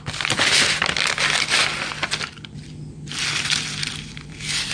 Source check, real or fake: real